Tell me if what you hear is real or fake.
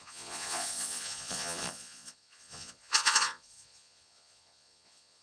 fake